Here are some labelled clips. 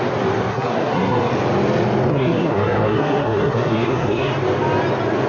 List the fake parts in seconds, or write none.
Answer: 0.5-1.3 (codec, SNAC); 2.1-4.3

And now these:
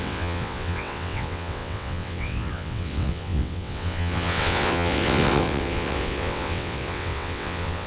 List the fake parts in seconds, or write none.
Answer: 0.0-7.9 (vocoder, WaveNeXt)

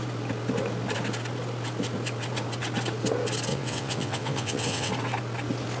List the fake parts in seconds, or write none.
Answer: 3.5-4.9 (vocoder, WaveNeXt)

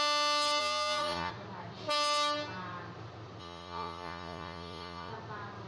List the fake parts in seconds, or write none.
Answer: 0.6-1.3 (vocoder, Vocos); 3.4-5.1

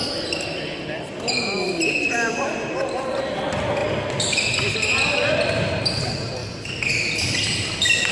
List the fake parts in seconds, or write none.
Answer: none

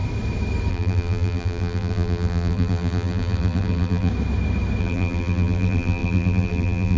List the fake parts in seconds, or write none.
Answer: 0.7-4.1 (vocoder, BigVGAN v2); 4.8-7.0

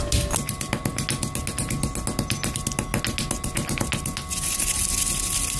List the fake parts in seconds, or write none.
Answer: none